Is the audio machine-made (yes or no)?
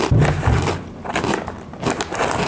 no